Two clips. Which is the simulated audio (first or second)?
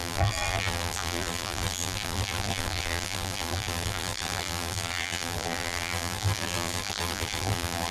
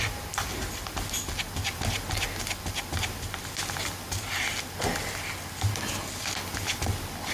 first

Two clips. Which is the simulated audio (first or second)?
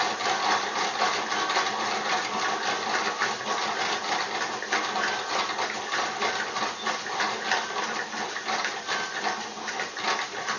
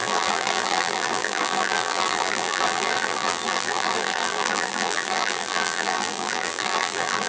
second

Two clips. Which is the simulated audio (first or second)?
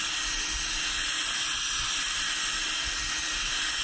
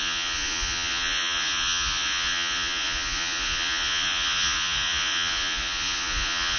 second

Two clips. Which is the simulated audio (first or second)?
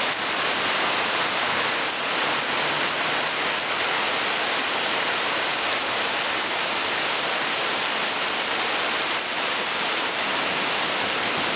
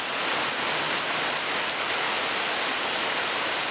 second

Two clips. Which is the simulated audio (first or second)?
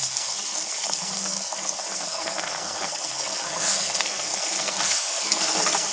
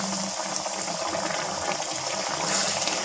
first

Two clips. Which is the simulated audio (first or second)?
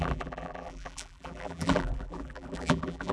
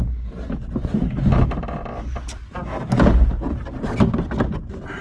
first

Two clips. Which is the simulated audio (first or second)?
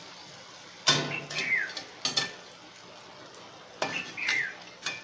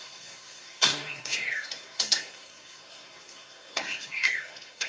second